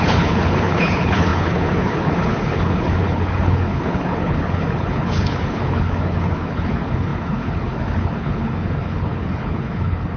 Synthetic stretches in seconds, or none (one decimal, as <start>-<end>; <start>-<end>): 0.0-10.2